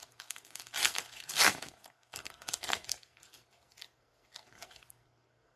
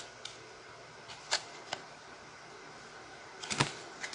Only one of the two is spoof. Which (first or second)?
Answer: first